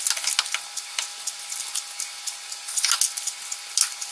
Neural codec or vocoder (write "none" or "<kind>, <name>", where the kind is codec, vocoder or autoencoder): none